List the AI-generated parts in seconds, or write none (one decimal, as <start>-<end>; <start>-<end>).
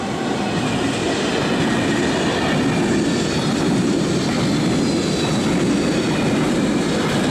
none